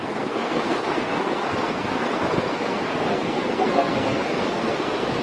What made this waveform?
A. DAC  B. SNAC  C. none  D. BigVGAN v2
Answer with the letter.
B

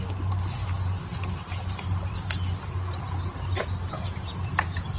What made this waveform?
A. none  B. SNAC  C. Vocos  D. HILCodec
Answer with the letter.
A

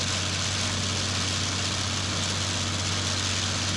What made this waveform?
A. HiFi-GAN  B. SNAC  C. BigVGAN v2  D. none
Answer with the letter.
D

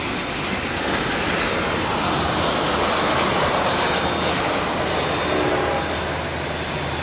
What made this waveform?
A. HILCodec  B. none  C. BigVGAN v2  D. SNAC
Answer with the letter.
B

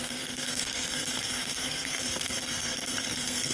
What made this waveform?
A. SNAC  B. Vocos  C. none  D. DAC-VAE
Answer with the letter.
A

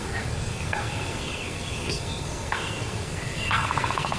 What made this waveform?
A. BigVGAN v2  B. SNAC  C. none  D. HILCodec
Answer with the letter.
B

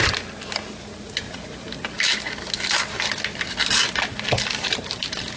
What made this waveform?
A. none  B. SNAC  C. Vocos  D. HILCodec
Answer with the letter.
A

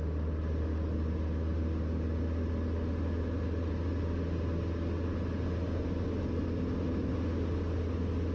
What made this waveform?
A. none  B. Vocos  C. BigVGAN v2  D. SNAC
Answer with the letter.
A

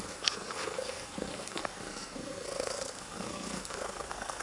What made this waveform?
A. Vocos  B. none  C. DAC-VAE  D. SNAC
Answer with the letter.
D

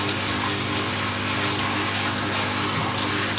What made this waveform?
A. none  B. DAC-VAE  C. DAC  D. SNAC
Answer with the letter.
A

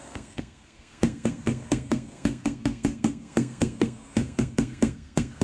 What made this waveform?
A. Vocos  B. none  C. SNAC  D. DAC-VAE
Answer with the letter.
C